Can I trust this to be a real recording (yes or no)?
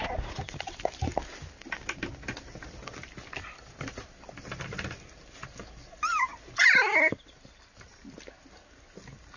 yes